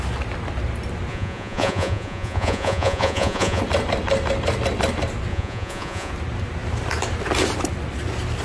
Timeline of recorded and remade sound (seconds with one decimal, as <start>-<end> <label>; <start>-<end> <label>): 0.0-1.1 recorded; 1.1-3.6 remade; 3.6-5.3 recorded; 5.3-6.1 remade; 6.1-8.4 recorded